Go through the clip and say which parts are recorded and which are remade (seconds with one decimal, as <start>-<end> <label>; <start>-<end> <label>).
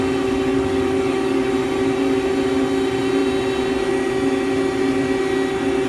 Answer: 0.0-0.5 recorded; 0.5-1.5 remade; 1.5-5.9 recorded